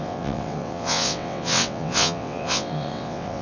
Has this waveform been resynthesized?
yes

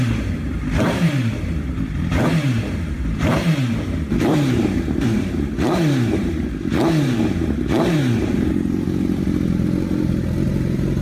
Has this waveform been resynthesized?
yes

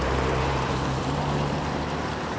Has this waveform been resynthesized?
yes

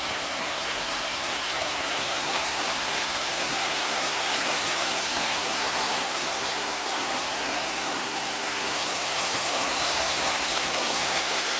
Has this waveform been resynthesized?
yes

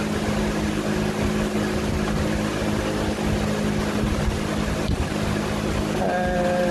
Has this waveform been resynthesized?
no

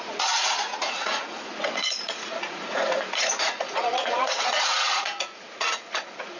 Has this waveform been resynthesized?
yes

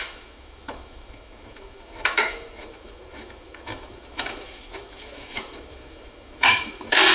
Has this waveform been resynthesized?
yes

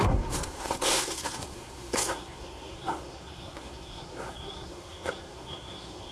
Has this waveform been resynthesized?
yes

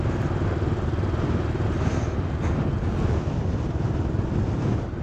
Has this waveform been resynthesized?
no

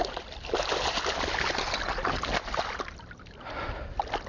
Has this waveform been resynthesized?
no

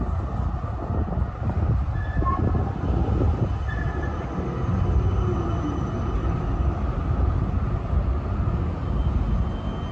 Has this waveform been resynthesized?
no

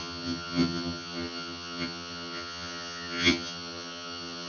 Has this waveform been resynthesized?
yes